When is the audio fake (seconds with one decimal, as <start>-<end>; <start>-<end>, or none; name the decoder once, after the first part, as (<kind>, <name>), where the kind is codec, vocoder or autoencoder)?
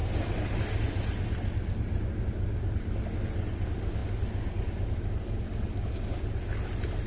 none